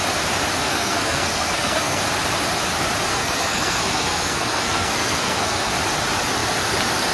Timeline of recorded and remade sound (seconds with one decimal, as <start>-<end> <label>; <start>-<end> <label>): 0.0-0.6 recorded; 0.6-2.0 remade; 2.0-3.1 recorded; 3.1-5.7 remade; 5.7-7.1 recorded